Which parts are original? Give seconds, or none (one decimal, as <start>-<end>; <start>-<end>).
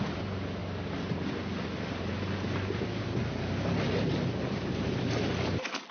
0.0-5.9